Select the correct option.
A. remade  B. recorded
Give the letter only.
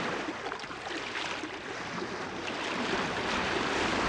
B